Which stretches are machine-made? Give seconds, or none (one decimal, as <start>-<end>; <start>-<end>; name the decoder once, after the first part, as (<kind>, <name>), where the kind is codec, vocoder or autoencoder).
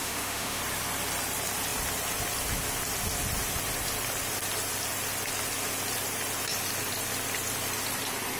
0.0-0.6 (autoencoder, DAC-VAE)